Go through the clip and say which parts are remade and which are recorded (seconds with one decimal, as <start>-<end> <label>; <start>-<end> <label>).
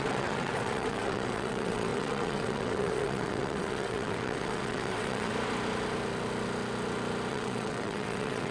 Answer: 0.0-5.3 remade; 5.3-7.3 recorded; 7.3-8.5 remade